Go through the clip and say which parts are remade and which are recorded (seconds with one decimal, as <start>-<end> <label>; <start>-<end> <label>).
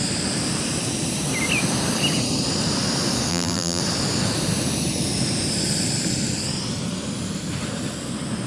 0.0-3.3 recorded; 3.3-3.8 remade; 3.8-8.5 recorded